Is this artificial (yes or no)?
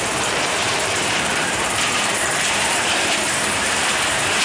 yes